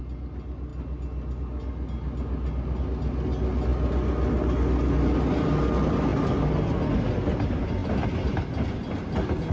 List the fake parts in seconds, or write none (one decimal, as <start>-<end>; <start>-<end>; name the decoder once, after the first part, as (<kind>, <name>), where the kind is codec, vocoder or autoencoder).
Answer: none